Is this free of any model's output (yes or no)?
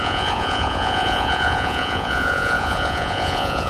no